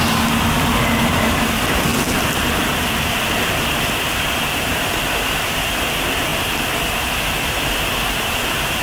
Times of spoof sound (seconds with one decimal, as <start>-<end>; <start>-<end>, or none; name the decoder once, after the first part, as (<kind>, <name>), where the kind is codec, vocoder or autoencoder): none